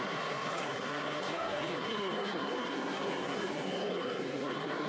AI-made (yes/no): yes